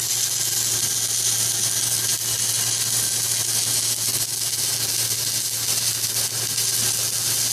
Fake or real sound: real